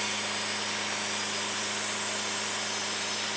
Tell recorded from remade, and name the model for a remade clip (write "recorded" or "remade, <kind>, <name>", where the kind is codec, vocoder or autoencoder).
recorded